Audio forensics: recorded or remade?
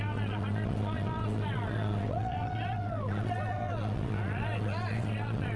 remade